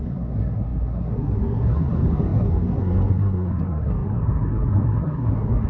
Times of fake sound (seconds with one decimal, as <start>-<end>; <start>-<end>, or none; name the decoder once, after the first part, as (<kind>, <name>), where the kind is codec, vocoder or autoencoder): 0.0-5.7 (codec, SNAC)